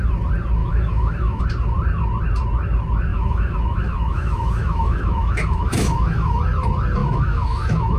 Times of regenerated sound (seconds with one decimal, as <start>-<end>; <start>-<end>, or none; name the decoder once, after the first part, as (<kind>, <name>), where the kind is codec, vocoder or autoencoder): 0.6-1.4 (autoencoder, DAC-VAE); 3.1-6.4; 7.0-8.0